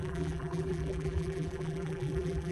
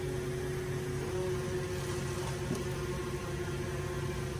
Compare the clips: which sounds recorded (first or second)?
second